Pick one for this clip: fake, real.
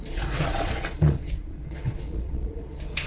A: fake